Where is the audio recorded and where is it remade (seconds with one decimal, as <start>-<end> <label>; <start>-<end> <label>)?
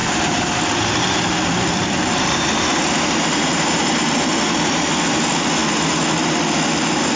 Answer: 0.0-4.1 remade; 4.1-7.2 recorded